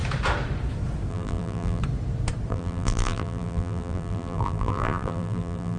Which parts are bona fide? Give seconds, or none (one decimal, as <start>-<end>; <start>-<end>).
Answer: 0.0-1.1; 1.8-2.5